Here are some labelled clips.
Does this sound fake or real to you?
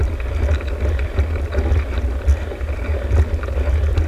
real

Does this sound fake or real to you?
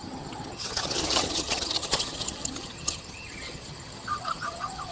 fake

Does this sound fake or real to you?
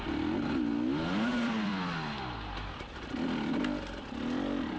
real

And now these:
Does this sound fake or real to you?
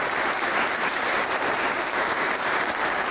fake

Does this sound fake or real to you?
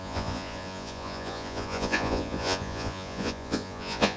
fake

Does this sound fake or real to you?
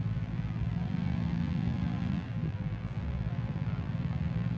fake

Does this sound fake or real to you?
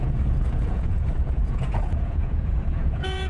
fake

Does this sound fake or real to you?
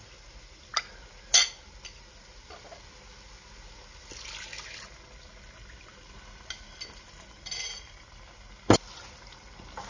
real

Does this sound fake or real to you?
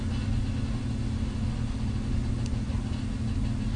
real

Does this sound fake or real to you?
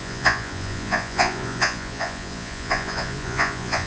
fake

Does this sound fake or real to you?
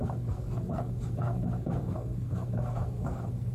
fake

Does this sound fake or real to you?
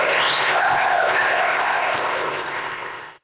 fake